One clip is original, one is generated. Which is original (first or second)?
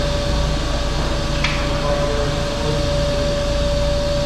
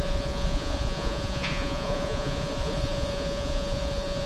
first